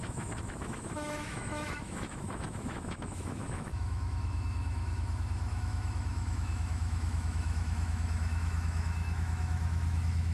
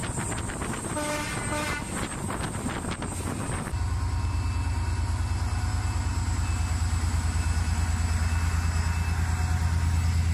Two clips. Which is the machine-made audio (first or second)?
first